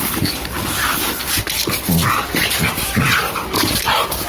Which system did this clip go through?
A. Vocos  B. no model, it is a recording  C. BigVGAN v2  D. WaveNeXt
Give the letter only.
B